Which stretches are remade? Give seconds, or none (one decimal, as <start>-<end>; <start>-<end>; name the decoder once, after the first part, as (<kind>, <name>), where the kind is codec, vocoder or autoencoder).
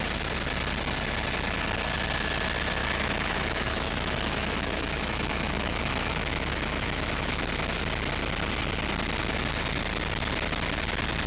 2.8-7.8 (autoencoder, DAC-VAE)